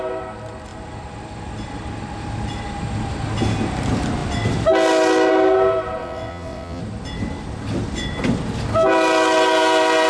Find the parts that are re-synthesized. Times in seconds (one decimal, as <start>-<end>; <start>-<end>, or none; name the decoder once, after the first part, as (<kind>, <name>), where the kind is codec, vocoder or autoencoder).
6.0-6.8 (vocoder, WaveNeXt)